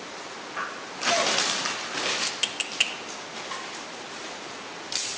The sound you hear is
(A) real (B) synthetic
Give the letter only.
A